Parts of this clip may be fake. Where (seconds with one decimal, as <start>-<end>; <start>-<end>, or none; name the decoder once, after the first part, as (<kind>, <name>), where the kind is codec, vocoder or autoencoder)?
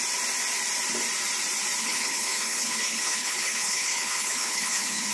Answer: 1.8-5.1 (codec, HILCodec)